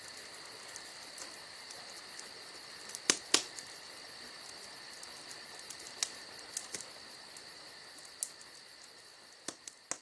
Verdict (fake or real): real